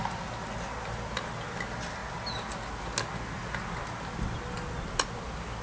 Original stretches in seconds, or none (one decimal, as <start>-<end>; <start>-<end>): 0.0-5.6